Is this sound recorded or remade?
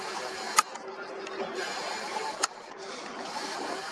recorded